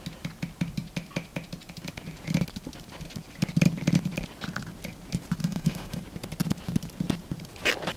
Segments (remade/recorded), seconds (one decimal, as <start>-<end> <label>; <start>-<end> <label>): 0.0-5.4 recorded; 5.4-6.0 remade; 6.0-8.0 recorded